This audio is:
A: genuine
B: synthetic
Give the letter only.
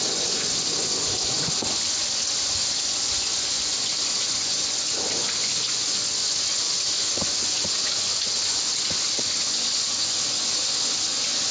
B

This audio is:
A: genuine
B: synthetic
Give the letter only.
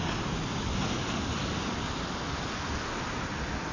A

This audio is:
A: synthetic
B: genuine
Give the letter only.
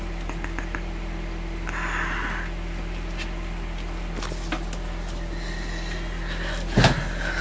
B